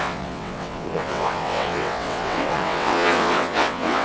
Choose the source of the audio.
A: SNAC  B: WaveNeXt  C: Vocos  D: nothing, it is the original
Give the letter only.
B